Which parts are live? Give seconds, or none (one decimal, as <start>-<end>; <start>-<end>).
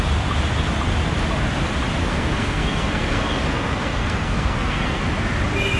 0.0-2.0; 5.0-5.8